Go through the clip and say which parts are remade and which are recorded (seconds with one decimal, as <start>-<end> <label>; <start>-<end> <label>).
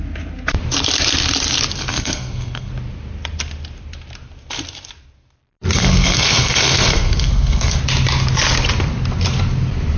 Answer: 0.0-1.9 recorded; 1.9-2.7 remade; 2.7-5.7 recorded; 5.7-7.8 remade; 7.8-10.0 recorded